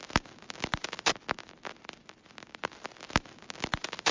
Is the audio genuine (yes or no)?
yes